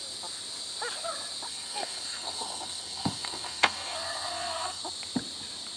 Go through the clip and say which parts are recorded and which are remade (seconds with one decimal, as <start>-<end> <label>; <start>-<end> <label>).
0.0-1.5 recorded; 1.5-4.8 remade; 4.8-5.8 recorded